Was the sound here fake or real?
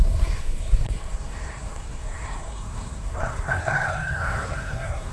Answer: fake